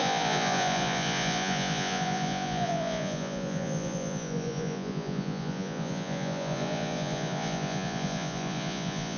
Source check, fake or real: fake